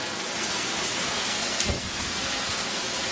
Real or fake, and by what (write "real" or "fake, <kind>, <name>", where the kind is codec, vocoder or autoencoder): fake, codec, SNAC